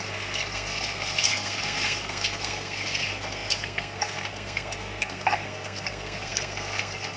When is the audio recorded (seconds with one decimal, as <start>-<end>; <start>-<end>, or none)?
none

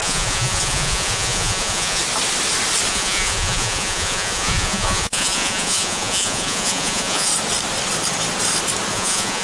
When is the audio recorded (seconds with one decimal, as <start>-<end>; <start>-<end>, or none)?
2.0-2.9; 7.3-8.9

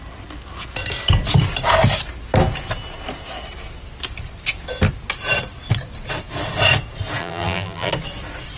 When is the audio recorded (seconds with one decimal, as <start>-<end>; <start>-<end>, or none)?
0.0-7.2; 7.9-8.6

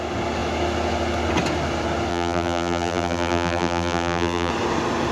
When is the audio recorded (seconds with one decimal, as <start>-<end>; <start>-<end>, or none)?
0.0-2.1; 4.5-5.1

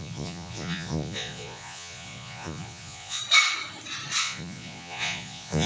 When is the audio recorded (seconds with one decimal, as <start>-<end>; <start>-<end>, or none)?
3.2-4.2

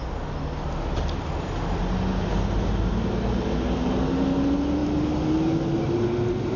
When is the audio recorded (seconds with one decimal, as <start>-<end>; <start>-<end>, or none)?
0.0-6.6